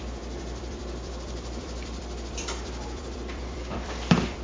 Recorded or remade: remade